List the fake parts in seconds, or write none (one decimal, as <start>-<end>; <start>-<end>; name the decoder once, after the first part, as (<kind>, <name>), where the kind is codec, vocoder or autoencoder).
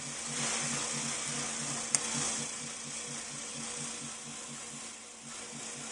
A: none